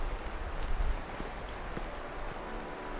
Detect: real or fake real